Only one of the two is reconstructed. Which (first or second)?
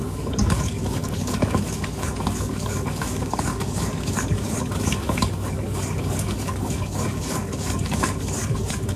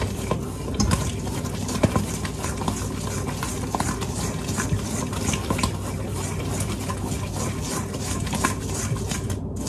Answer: first